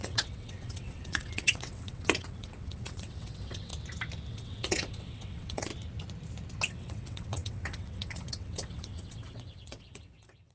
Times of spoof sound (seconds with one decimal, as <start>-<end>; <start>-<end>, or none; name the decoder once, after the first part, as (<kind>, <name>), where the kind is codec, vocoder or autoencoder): 0.0-3.7 (vocoder, WaveNeXt); 4.3-5.7; 6.7-10.5